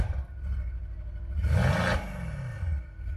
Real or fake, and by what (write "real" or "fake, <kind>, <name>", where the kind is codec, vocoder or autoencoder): real